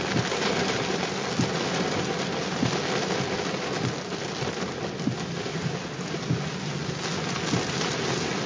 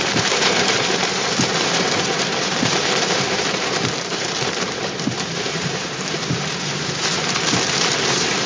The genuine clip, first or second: first